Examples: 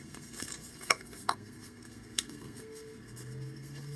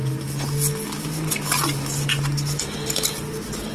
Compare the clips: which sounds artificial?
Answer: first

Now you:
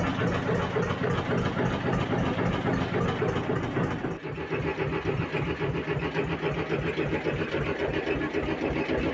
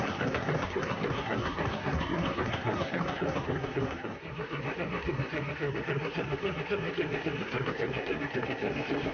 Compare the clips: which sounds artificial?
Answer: second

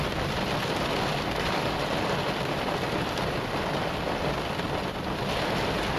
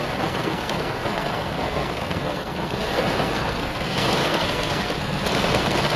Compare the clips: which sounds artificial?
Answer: second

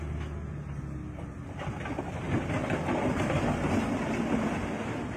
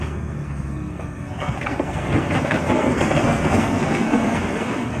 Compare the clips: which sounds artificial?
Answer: second